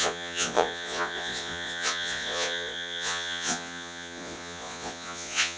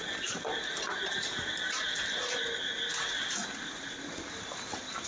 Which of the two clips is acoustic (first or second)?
second